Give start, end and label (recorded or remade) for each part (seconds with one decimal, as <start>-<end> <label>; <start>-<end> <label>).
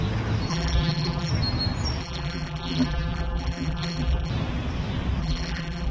0.0-0.5 recorded; 0.5-1.3 remade; 1.3-2.0 recorded; 2.0-4.3 remade; 4.3-5.2 recorded; 5.2-5.9 remade